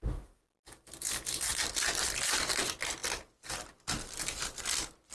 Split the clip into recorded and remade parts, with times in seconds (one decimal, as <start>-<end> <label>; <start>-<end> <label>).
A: 0.0-5.1 recorded